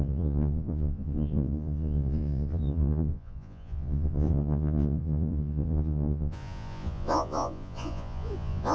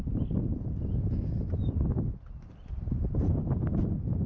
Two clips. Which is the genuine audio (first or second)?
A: second